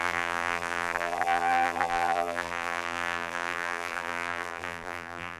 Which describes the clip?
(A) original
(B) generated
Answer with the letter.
B